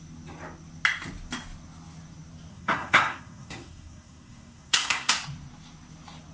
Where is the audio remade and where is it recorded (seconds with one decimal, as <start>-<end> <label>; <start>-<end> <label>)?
0.0-2.5 recorded; 2.5-5.1 remade; 5.1-6.3 recorded